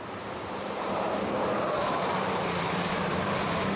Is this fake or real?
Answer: fake